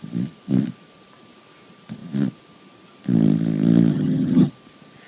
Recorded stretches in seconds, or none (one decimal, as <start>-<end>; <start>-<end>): 0.0-3.9; 4.5-5.1